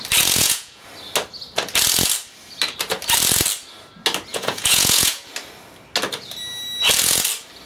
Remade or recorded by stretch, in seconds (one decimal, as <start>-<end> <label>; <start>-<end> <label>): 0.0-0.4 recorded; 0.4-0.9 remade; 0.9-4.3 recorded; 4.3-5.3 remade; 5.3-7.7 recorded